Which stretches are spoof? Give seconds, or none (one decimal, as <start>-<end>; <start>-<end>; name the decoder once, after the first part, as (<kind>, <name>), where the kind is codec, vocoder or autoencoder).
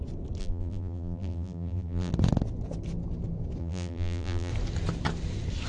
0.4-2.1 (vocoder, BigVGAN v2); 3.6-4.5